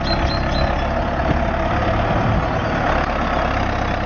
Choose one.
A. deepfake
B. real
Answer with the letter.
B